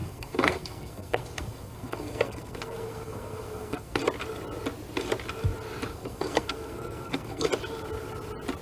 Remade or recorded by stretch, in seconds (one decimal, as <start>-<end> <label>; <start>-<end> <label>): 0.0-4.0 remade; 4.0-5.9 recorded; 5.9-7.5 remade; 7.5-8.6 recorded